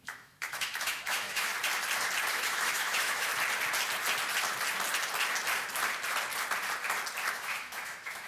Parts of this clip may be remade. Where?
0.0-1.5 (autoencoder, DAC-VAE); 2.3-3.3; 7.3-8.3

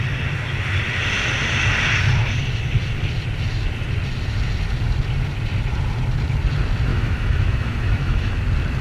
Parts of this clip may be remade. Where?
6.9-8.4 (autoencoder, DAC-VAE)

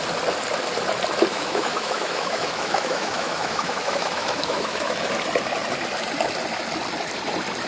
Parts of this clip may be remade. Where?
1.3-5.1 (autoencoder, DAC-VAE)

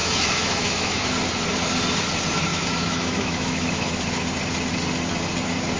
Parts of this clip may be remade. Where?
0.0-1.1 (autoencoder, DAC-VAE); 2.5-3.9

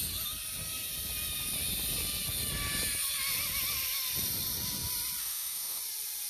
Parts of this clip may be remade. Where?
5.2-5.8 (autoencoder, DAC-VAE)

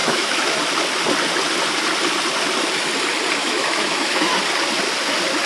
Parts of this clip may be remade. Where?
0.0-0.6 (autoencoder, DAC-VAE); 3.4-4.3